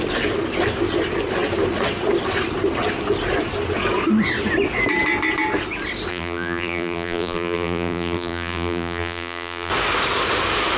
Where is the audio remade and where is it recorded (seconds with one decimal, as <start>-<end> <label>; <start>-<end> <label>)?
0.0-6.1 recorded; 6.1-9.7 remade; 9.7-10.8 recorded